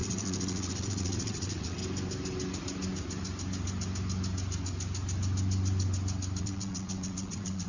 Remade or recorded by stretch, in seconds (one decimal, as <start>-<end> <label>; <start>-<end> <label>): 0.0-1.8 remade; 1.8-6.4 recorded; 6.4-7.7 remade